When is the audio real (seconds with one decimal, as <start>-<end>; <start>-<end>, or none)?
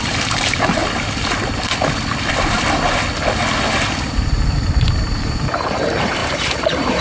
0.8-3.7